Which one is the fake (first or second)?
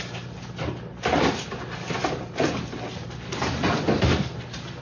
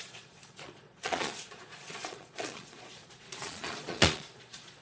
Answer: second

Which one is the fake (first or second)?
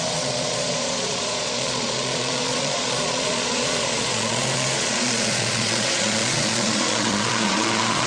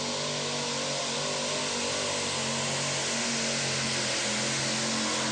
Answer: first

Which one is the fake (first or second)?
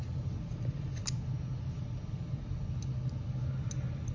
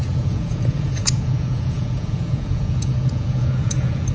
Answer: second